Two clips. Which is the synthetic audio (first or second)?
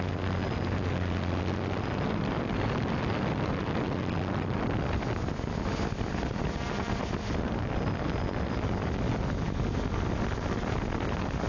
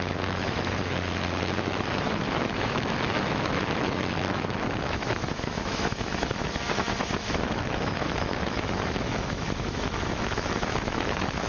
second